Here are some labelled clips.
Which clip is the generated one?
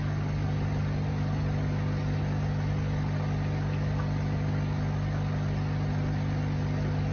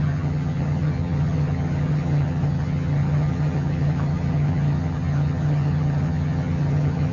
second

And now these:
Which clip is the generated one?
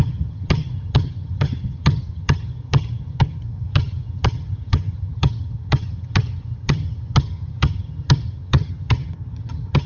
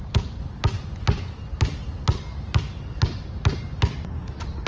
first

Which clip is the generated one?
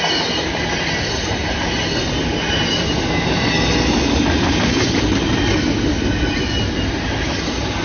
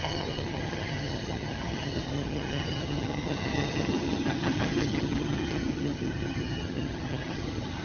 second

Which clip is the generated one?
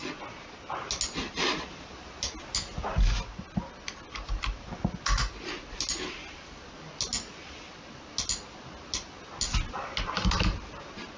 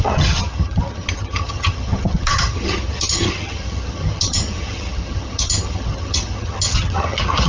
second